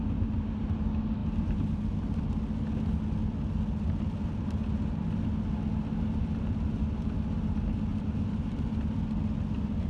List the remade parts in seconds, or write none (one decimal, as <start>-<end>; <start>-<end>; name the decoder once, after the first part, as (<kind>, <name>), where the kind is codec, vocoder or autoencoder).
1.2-1.7 (vocoder, BigVGAN v2)